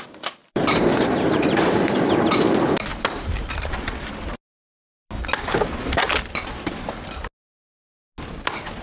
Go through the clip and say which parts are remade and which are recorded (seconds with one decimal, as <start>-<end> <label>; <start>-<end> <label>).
0.0-0.4 recorded; 0.4-2.1 remade; 2.1-8.8 recorded